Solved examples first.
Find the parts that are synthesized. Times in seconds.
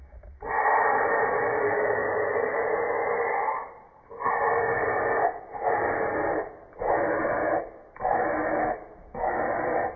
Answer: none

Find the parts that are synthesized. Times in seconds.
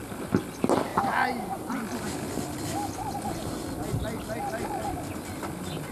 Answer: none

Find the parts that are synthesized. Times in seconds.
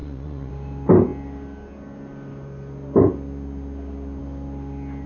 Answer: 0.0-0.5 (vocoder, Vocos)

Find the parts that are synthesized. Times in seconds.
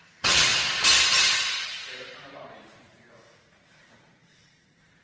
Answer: 0.0-0.5 (vocoder, Vocos); 2.3-5.0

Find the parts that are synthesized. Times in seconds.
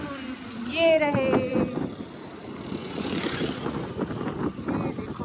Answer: 2.8-3.9 (vocoder, Vocos)